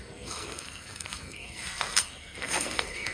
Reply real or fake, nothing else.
fake